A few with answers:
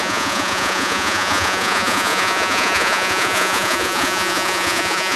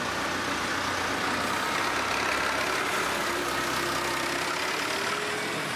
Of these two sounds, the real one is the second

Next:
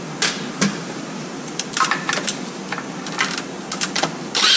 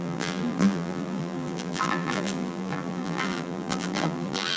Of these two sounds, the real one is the first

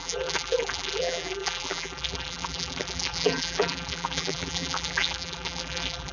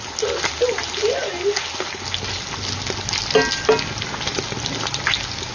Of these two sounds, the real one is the second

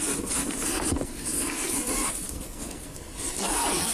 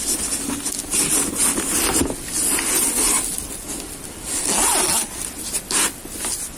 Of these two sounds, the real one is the second